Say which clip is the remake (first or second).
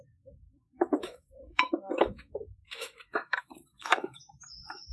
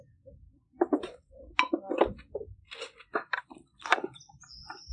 first